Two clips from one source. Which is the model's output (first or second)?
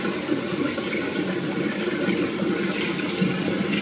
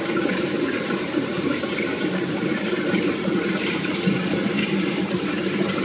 second